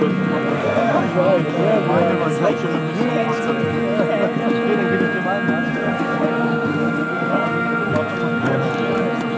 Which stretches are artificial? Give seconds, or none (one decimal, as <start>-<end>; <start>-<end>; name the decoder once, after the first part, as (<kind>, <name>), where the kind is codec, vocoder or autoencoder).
0.5-1.0 (codec, SNAC); 5.7-7.9